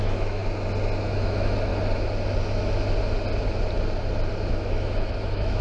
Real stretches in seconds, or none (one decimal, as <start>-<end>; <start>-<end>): 0.4-1.0; 1.7-4.3